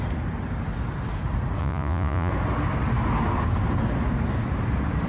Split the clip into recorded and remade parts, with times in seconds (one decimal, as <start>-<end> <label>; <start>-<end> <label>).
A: 0.0-1.6 recorded; 1.6-2.3 remade; 2.3-5.1 recorded